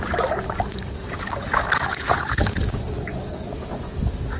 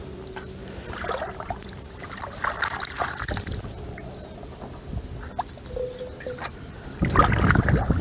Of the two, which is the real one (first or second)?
second